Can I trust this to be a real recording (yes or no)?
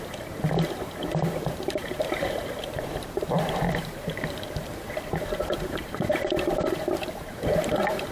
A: no